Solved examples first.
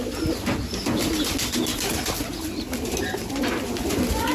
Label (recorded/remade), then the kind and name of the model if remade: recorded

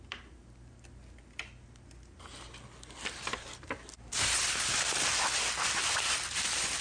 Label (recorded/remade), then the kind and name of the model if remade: recorded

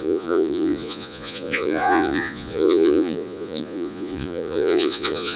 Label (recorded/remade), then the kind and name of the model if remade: remade, vocoder, Vocos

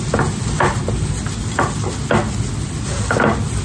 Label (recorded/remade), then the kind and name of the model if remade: recorded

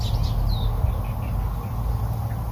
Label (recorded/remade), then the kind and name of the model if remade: recorded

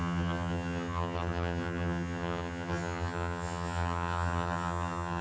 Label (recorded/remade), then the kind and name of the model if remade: remade, vocoder, HiFi-GAN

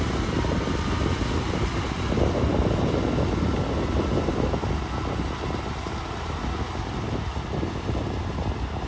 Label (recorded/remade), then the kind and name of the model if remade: recorded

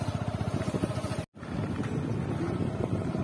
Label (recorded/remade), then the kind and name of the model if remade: recorded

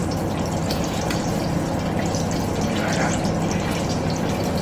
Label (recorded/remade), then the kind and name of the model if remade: recorded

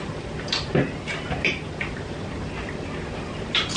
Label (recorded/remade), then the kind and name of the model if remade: recorded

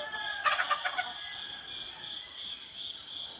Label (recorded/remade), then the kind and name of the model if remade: recorded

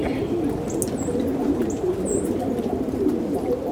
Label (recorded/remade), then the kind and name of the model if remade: recorded